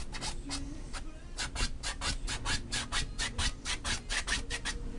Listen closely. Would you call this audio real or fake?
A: real